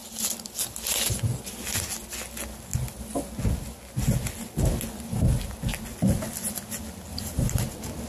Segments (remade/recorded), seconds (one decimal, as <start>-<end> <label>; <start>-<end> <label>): 0.0-7.1 recorded; 7.1-7.6 remade; 7.6-8.1 recorded